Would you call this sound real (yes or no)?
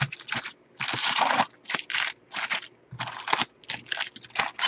yes